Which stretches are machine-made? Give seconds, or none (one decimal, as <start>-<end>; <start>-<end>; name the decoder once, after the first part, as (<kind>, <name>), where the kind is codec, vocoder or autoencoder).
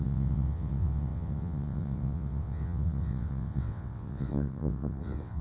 0.0-5.4 (vocoder, WaveNeXt)